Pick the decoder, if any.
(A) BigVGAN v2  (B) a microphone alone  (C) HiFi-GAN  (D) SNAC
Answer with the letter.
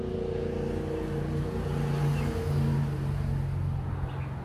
B